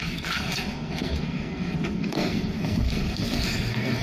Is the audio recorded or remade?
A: remade